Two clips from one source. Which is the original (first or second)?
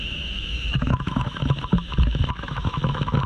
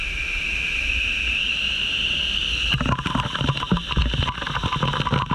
second